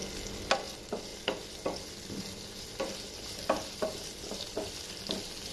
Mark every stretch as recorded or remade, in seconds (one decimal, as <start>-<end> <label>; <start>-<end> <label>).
0.0-5.5 recorded